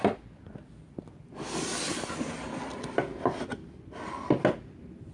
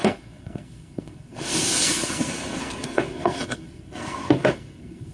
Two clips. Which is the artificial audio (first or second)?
second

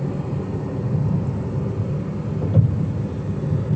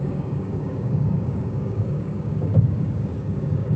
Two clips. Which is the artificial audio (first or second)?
second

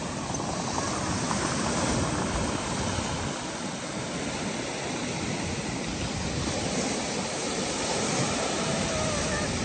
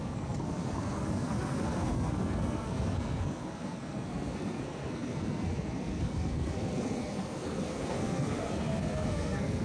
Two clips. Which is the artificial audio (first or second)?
second